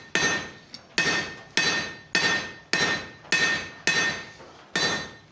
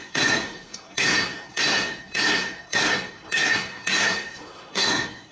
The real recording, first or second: first